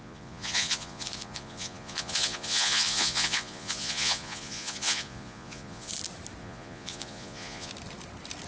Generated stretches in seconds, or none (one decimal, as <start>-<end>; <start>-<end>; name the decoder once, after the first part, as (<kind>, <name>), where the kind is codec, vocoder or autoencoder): 0.0-5.9 (vocoder, Vocos); 6.4-7.7